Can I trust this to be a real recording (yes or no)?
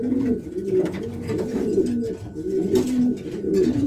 yes